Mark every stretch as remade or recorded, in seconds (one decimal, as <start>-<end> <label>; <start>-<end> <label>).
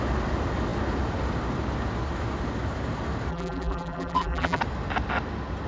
0.0-3.3 recorded; 3.3-4.6 remade; 4.6-5.7 recorded